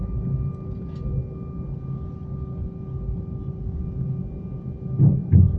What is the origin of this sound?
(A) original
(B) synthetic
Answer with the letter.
A